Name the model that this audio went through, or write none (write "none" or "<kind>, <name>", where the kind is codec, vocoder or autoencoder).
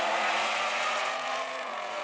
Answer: vocoder, Vocos